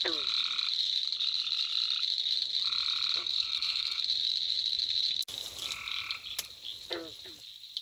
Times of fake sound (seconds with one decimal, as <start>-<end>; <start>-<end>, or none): 3.2-4.0